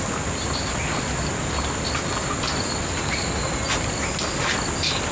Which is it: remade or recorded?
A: recorded